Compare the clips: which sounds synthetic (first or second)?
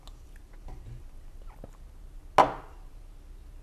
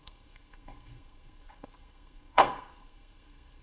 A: second